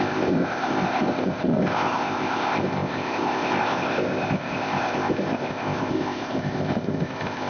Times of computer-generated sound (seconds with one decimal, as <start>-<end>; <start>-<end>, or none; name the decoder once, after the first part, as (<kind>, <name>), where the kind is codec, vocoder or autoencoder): 0.0-7.5 (codec, ZipCodec)